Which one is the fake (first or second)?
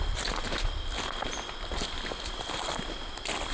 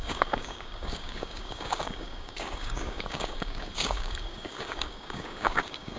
second